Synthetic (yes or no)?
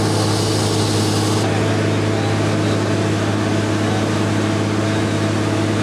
no